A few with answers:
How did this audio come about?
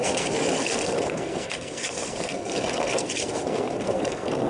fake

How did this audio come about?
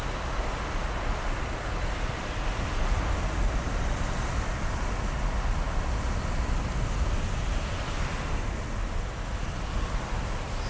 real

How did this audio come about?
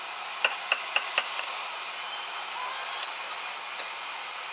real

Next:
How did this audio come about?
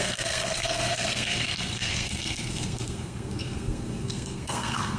fake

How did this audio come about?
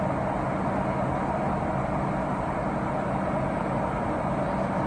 real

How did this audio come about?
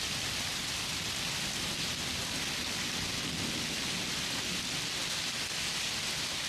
real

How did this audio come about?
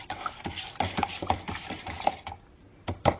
real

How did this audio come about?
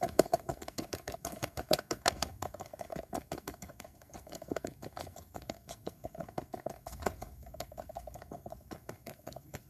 fake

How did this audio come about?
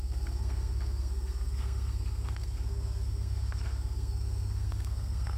fake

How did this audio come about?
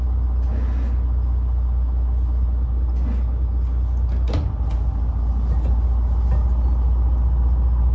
real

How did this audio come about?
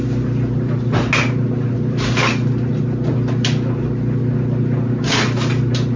real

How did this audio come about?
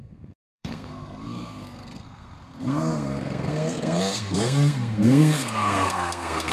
fake